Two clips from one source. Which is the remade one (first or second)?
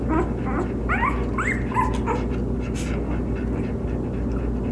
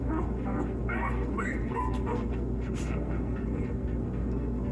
second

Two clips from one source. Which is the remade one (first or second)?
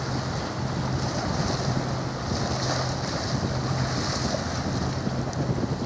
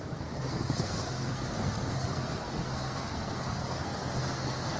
second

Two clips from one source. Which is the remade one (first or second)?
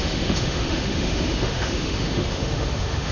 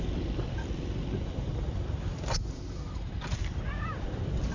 first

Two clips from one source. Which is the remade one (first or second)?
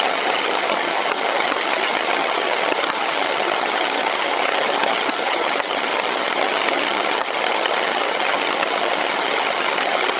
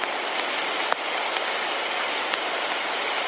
first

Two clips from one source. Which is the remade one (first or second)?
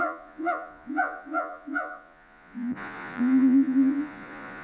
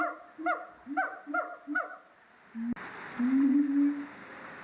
first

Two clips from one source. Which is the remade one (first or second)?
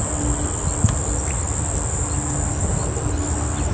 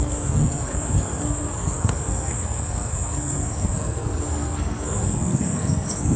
second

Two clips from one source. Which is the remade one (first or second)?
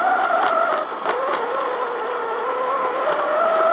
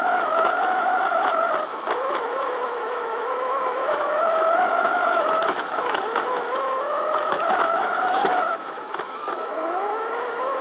second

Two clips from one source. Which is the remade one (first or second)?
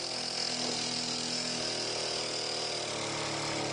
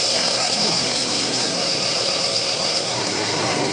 second